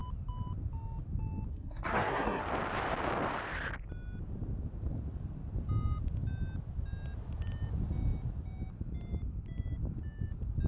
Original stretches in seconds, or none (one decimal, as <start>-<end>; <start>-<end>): 0.0-1.5; 2.4-10.7